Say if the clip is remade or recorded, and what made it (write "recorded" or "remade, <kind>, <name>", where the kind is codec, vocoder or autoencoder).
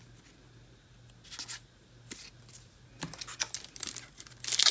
recorded